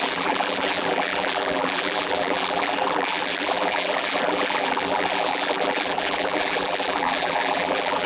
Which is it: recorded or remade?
remade